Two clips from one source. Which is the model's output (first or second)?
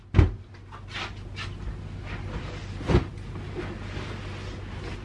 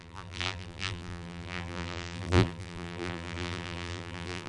second